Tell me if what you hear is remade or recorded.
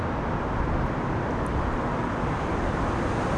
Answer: recorded